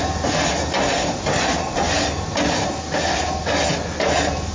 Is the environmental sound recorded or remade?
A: recorded